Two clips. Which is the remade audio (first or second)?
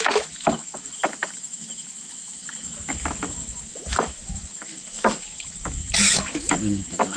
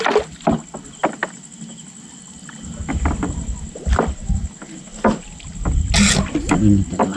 first